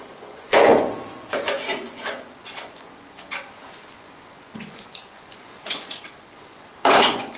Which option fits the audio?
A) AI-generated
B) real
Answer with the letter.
A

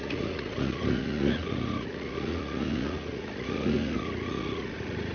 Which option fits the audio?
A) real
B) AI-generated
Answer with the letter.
B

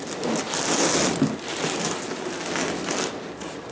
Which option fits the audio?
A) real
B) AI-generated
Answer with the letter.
A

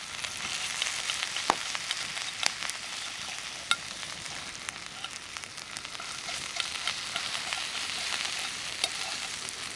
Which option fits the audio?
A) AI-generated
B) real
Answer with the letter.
B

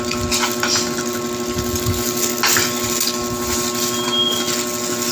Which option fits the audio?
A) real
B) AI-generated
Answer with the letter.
A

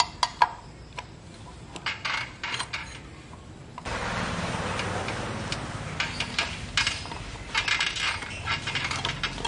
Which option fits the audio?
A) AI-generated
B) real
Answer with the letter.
B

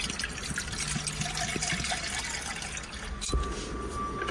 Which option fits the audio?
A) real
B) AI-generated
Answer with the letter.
A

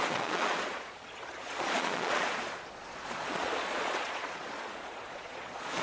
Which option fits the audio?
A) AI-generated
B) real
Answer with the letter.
A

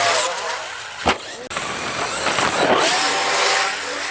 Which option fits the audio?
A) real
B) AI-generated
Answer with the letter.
A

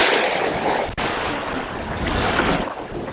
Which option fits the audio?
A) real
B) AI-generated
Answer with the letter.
A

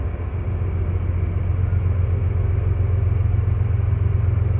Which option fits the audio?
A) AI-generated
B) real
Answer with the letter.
B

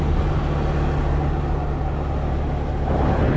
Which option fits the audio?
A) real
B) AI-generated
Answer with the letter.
A